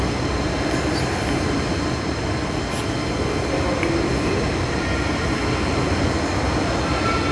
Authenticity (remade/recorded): recorded